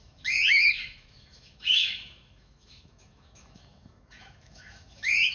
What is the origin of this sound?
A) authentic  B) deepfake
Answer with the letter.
B